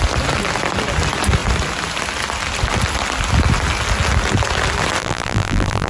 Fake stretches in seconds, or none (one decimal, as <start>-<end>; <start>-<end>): 5.0-5.9